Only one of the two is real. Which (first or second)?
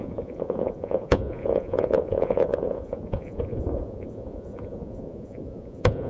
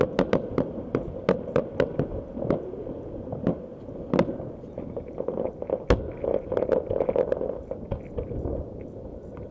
second